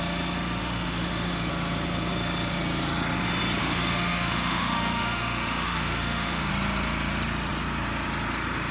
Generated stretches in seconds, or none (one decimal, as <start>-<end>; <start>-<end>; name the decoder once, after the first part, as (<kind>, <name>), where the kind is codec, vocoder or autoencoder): 0.6-1.5 (autoencoder, DAC-VAE); 3.6-6.5